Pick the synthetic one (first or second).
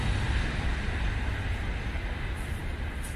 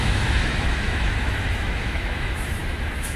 second